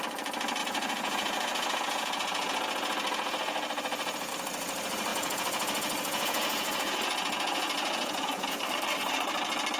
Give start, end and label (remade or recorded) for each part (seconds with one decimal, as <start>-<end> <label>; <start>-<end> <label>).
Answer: 0.0-0.6 recorded; 0.6-4.3 remade; 4.3-5.1 recorded; 5.1-8.7 remade; 8.7-9.8 recorded